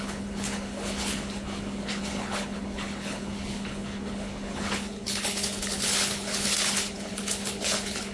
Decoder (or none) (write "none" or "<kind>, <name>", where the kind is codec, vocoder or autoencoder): codec, HILCodec